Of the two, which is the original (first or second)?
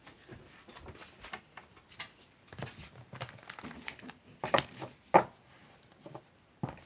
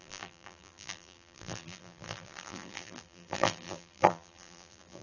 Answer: first